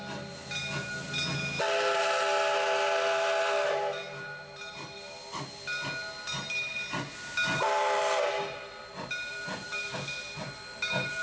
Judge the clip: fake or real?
real